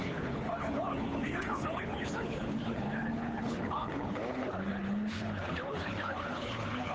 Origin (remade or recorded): remade